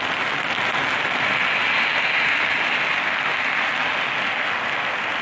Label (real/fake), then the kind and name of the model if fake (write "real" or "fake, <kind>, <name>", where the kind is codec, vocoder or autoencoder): real